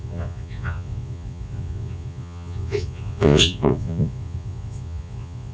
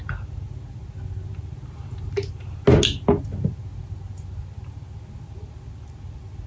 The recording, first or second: second